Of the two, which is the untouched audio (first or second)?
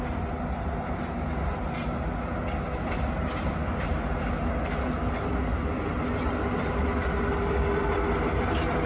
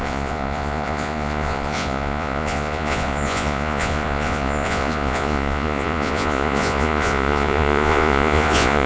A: first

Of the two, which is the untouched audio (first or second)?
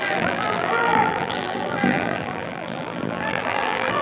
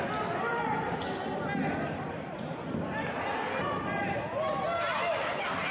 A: second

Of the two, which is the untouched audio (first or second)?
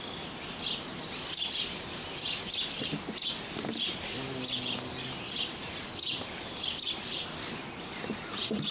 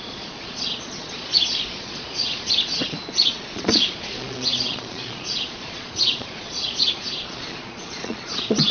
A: first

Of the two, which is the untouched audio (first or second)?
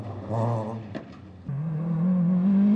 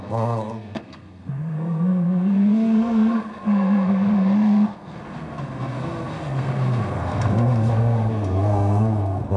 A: first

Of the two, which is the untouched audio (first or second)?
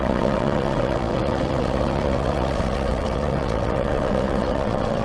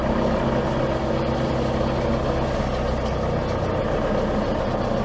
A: second